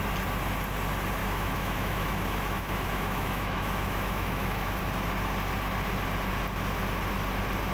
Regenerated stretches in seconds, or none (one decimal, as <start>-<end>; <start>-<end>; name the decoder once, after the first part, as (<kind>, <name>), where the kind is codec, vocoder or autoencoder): 1.2-4.8 (autoencoder, DAC-VAE)